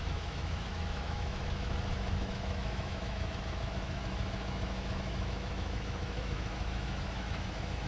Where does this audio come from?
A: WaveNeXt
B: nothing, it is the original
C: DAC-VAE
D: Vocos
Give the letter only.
C